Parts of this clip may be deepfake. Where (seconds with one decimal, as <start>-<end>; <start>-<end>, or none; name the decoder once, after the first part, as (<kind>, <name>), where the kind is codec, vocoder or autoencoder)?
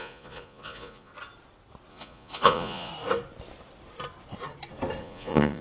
0.0-1.1 (vocoder, Vocos); 1.9-2.9; 5.0-5.6